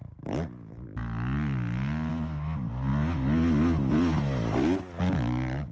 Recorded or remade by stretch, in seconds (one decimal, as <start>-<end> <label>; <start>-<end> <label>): 0.0-5.7 recorded